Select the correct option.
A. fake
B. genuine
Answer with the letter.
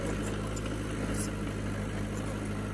B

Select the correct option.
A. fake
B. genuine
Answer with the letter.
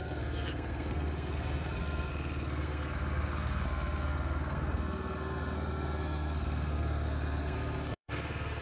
A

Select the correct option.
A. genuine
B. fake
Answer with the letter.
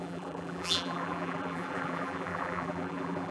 B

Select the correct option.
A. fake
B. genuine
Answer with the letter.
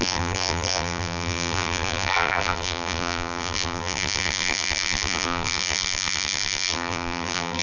A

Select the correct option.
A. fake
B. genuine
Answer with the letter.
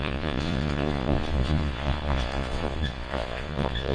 A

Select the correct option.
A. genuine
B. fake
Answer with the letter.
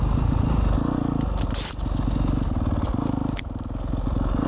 A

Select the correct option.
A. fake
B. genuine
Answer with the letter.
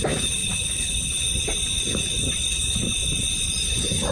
A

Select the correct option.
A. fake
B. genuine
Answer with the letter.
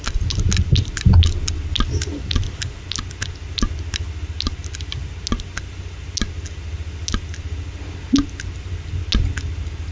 B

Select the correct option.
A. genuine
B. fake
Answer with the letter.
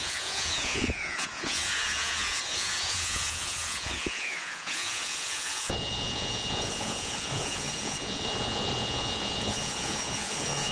B